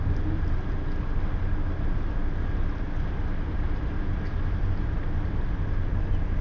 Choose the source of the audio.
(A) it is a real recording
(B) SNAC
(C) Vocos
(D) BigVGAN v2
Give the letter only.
A